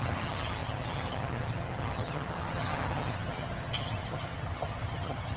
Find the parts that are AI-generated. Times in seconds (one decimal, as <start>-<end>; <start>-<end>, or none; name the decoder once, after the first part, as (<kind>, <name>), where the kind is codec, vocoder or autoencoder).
0.0-5.4 (vocoder, HiFi-GAN)